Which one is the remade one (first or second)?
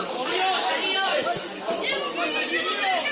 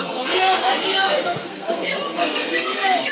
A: second